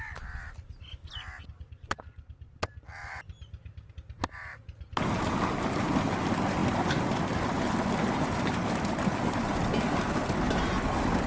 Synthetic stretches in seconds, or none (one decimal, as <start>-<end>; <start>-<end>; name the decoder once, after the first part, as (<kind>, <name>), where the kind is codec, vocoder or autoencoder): none